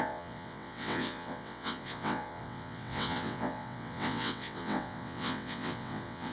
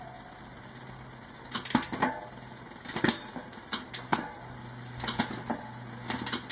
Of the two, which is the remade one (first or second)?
first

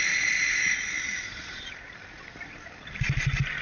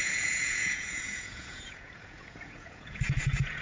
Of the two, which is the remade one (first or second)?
second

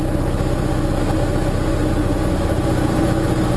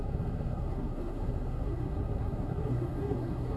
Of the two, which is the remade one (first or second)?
second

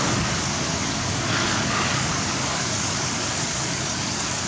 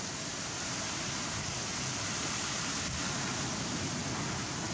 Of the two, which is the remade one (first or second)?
first